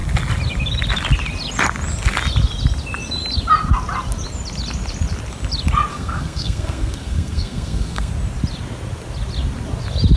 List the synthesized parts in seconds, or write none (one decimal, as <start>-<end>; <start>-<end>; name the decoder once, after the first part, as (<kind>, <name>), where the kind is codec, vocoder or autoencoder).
5.9-8.1 (codec, SNAC)